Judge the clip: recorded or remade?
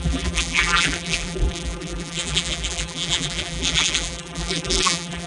remade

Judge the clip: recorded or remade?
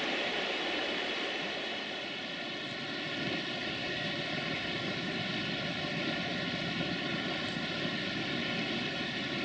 recorded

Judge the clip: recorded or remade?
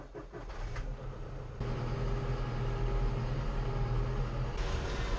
recorded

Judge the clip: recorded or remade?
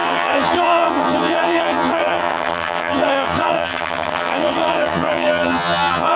remade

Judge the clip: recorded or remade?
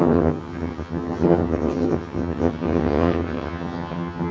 remade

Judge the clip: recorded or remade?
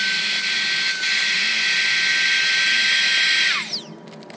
recorded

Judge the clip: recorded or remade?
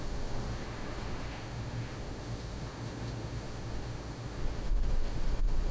remade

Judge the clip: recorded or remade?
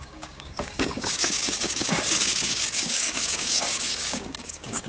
remade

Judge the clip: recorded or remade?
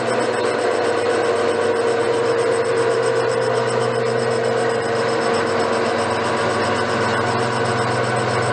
recorded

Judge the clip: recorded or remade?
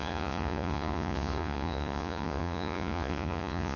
remade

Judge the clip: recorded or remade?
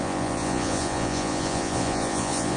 remade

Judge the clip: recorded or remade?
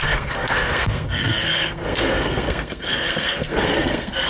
remade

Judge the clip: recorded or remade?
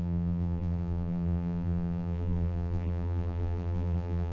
remade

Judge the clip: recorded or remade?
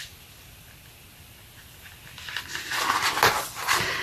recorded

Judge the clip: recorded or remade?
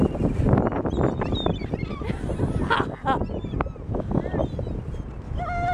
recorded